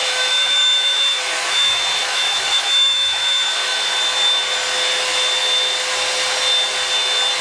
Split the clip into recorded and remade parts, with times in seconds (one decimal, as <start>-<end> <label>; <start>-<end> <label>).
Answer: 0.0-4.0 remade; 4.0-7.4 recorded